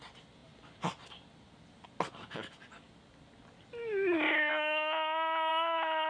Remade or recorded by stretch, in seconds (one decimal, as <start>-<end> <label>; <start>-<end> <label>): 0.0-6.1 recorded

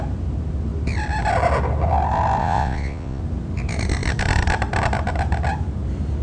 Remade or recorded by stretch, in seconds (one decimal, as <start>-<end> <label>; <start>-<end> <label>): 0.0-2.4 recorded; 2.4-3.2 remade; 3.2-6.2 recorded